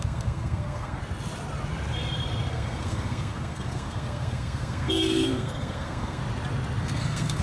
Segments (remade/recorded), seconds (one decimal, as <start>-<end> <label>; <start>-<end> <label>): 0.0-1.0 remade; 1.0-2.5 recorded; 2.5-6.2 remade; 6.2-6.8 recorded; 6.8-7.4 remade